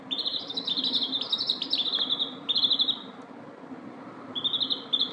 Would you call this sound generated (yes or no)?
yes